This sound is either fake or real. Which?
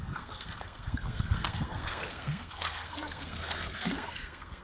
fake